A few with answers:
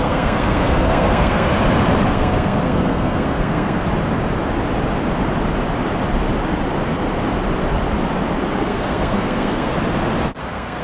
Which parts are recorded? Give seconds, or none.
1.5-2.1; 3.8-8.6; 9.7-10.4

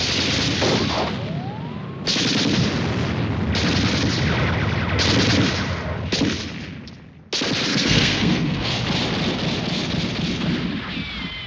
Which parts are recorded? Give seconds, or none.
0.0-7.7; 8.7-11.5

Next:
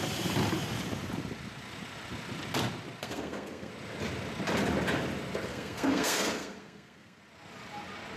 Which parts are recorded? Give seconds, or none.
0.0-3.0; 3.7-5.5; 7.2-8.2

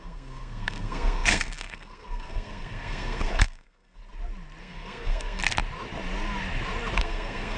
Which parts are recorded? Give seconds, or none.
4.0-4.6; 5.4-7.0

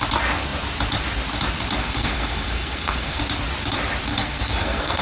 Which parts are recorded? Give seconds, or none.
0.0-1.8; 3.2-4.1

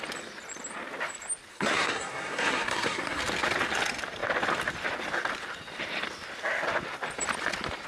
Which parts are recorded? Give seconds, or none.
0.0-1.5; 3.2-7.9